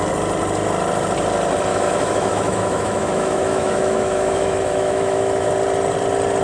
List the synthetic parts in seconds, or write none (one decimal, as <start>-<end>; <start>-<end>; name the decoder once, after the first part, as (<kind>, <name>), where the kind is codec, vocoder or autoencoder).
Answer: 1.7-5.5 (autoencoder, DAC-VAE)